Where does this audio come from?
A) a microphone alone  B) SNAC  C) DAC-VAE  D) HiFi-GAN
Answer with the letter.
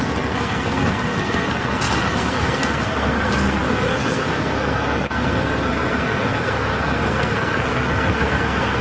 B